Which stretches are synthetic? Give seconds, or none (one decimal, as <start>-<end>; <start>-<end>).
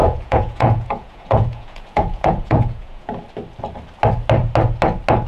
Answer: 0.0-3.2